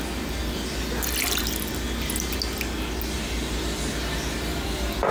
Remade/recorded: recorded